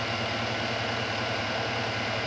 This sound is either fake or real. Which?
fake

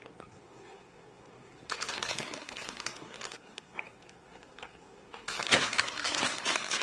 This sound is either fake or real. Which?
fake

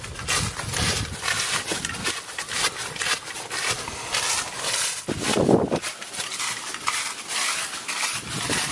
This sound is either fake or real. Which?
real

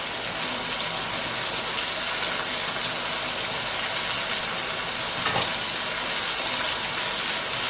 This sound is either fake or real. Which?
real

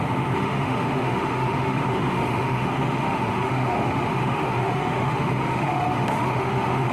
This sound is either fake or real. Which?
fake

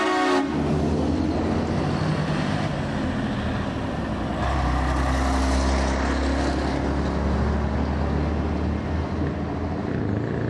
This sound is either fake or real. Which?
real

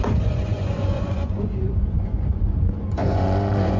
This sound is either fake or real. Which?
fake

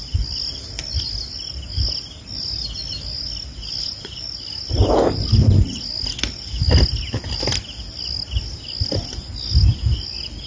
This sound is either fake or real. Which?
real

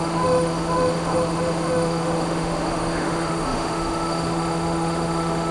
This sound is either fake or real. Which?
fake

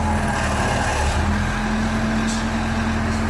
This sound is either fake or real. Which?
real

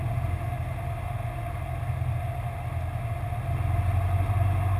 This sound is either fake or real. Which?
real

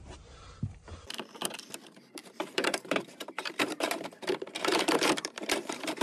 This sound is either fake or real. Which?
fake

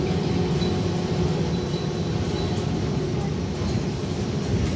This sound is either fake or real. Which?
real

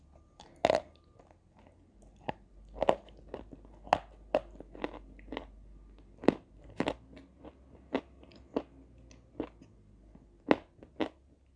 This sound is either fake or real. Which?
real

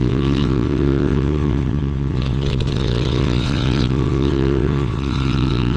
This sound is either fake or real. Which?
fake